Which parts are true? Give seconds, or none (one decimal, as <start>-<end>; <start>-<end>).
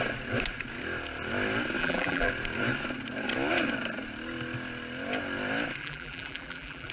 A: 0.0-1.8; 2.3-5.8